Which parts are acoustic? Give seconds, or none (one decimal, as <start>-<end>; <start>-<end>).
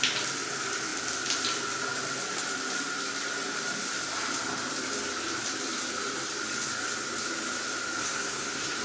0.0-8.0